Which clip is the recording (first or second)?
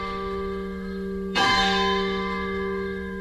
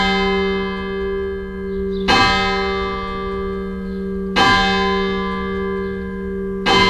second